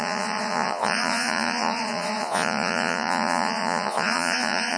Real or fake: fake